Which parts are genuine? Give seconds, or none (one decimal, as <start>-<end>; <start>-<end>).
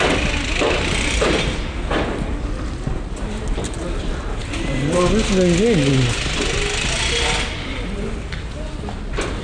0.0-9.4